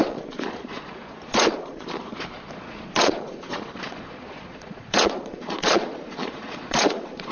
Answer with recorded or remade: remade